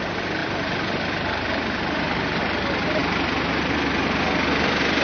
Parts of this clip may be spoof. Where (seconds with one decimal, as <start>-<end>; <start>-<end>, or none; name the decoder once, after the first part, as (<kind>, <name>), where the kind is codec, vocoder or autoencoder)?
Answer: 0.4-2.4 (vocoder, BigVGAN v2)